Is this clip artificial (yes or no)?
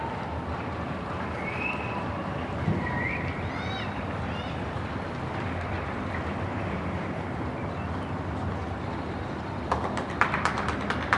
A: yes